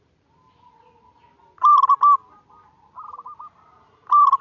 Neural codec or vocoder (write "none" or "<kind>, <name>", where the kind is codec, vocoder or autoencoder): none